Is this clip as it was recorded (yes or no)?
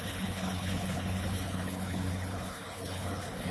no